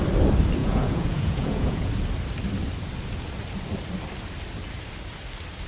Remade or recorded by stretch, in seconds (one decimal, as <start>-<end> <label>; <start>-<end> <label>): 0.0-0.6 recorded; 0.6-1.9 remade; 1.9-5.7 recorded